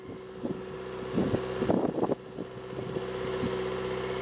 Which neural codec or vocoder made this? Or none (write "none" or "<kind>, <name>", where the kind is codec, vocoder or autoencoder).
none